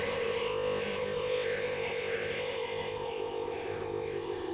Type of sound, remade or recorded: remade